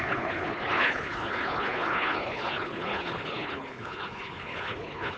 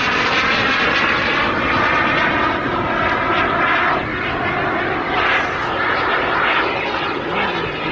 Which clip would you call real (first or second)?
second